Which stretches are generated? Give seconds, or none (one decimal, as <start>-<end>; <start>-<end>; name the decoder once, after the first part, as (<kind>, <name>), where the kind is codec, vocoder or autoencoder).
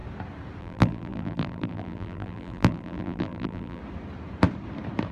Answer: 0.6-3.8 (vocoder, BigVGAN v2)